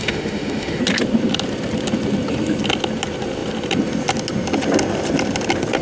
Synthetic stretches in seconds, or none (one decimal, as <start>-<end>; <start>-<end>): 0.0-0.8